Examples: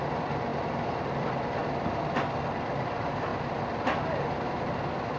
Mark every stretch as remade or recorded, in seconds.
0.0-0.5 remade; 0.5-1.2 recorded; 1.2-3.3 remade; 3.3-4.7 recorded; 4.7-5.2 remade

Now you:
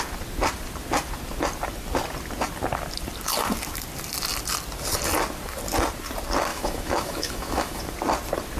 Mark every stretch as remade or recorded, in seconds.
0.0-6.5 recorded; 6.5-7.8 remade; 7.8-8.6 recorded

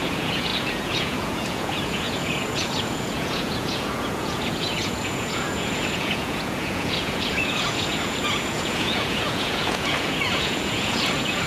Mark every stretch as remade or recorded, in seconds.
0.0-11.5 remade

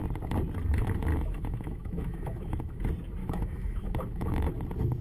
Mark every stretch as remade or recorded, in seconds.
0.0-1.1 recorded; 1.1-2.8 remade; 2.8-3.2 recorded; 3.2-4.5 remade; 4.5-5.0 recorded

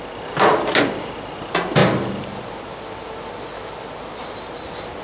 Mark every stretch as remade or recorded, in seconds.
0.0-5.0 recorded

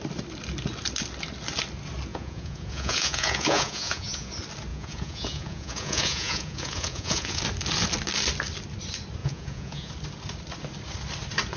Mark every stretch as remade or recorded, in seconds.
0.0-2.1 recorded; 2.1-4.3 remade; 4.3-4.7 recorded; 4.7-7.4 remade; 7.4-9.2 recorded; 9.2-9.9 remade; 9.9-11.6 recorded

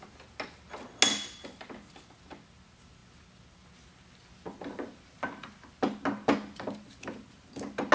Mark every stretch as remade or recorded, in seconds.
0.0-7.9 recorded

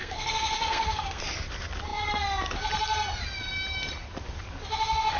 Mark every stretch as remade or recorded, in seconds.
0.0-1.2 remade; 1.2-5.2 recorded